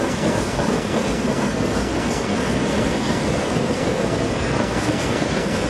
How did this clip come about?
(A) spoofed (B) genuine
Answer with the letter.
A